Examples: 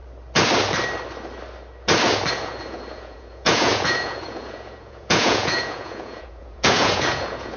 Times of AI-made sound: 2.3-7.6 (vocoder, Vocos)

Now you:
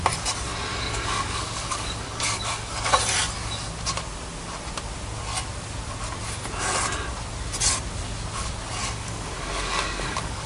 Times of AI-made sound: 0.7-2.9 (codec, DAC); 8.8-10.5

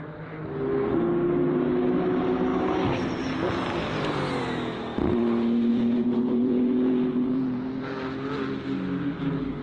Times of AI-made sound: 5.7-7.7 (vocoder, Vocos)

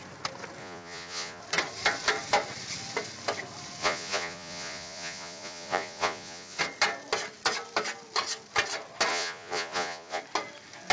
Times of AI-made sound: 0.6-1.4 (vocoder, Vocos); 3.8-6.6; 9.1-10.2